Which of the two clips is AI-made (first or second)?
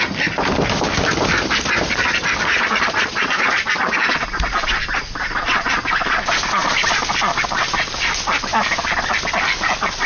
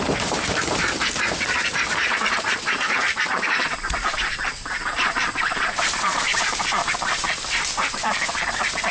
second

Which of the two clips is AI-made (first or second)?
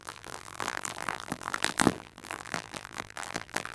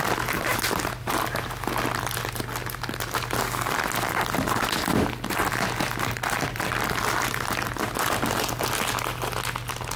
first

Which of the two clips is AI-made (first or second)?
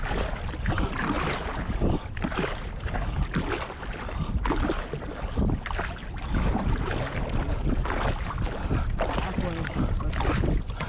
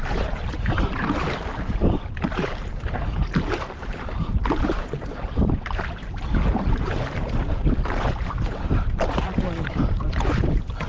second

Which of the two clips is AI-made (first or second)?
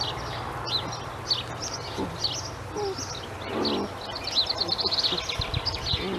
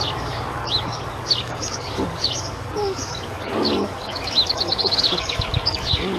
second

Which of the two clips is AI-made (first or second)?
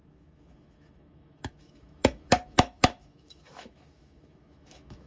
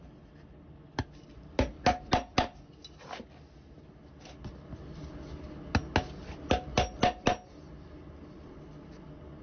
first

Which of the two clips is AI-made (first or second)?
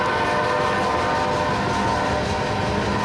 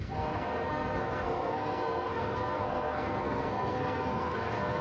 second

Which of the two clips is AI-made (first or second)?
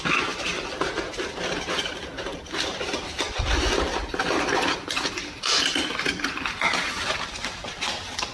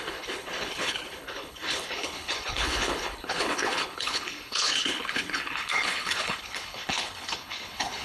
second